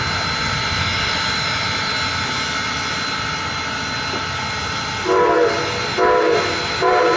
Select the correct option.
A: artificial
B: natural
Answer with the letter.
B